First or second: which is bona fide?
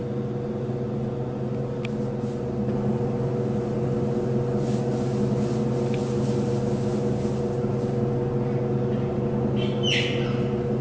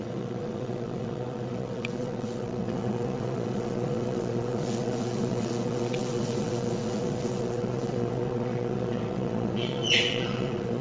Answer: first